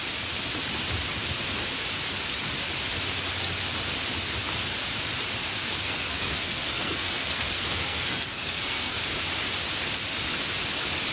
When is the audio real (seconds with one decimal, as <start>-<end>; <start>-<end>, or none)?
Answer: 0.0-5.6; 9.0-11.1